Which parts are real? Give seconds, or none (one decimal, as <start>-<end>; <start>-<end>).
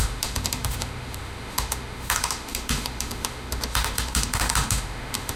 none